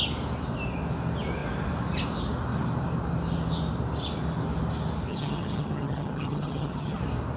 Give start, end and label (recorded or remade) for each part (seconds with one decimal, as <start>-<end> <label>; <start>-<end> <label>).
0.0-5.1 recorded; 5.1-7.0 remade; 7.0-7.4 recorded